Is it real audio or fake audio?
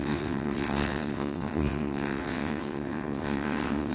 fake